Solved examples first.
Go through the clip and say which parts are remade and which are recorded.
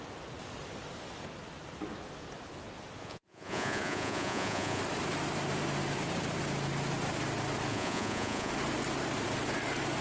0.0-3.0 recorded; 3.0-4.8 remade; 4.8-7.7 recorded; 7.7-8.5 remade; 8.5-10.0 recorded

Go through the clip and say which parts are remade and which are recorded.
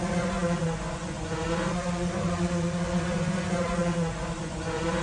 0.0-5.0 remade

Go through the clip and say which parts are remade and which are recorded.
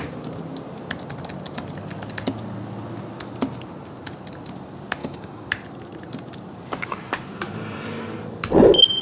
0.0-5.0 recorded; 5.0-5.5 remade; 5.5-9.0 recorded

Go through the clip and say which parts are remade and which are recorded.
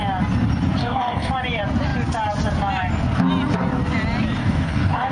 0.0-0.8 recorded; 0.8-1.3 remade; 1.3-4.4 recorded; 4.4-5.1 remade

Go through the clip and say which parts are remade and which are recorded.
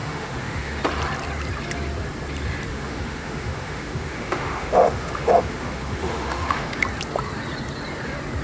0.0-0.8 remade; 0.8-2.7 recorded; 2.7-6.8 remade; 6.8-8.4 recorded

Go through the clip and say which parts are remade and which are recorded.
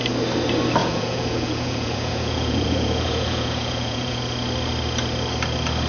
0.0-0.8 recorded; 0.8-4.2 remade; 4.2-5.9 recorded